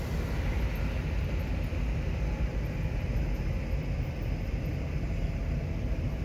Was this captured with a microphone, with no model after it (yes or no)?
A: yes